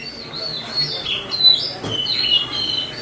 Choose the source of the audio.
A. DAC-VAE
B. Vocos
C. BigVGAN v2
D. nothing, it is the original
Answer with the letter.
D